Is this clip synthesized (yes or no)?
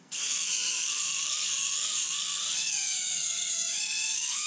yes